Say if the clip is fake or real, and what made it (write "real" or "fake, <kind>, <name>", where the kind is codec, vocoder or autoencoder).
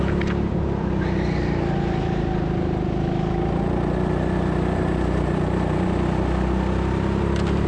real